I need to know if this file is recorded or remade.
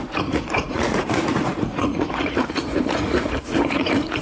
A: remade